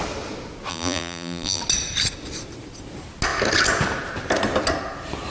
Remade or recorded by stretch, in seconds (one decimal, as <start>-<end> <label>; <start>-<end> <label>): 0.0-0.7 recorded; 0.7-1.6 remade; 1.6-5.3 recorded